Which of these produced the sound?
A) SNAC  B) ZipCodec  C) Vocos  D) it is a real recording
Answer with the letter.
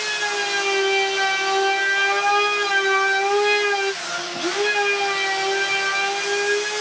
D